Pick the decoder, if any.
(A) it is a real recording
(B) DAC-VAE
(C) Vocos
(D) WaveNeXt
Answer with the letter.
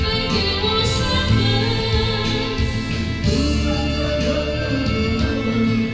A